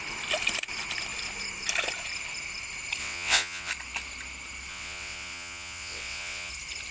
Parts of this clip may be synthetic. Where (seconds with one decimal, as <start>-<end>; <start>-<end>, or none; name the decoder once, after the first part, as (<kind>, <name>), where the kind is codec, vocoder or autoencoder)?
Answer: 3.0-3.7 (vocoder, WaveNeXt); 4.7-6.5